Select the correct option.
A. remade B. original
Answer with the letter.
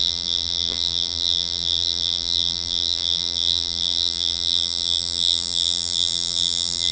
A